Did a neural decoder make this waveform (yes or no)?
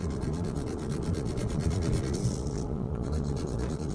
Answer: yes